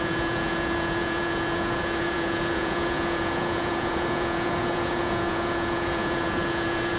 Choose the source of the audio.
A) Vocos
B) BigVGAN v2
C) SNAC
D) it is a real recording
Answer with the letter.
A